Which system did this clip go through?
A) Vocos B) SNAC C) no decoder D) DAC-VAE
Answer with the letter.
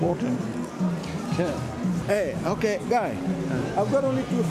C